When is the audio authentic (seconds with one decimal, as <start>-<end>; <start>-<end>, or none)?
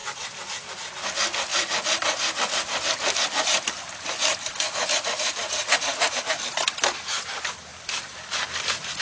0.9-1.5; 6.2-7.7